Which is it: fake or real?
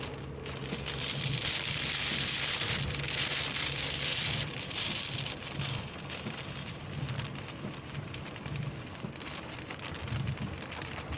fake